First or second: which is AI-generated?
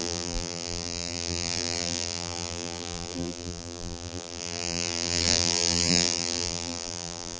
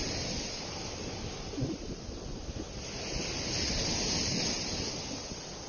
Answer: first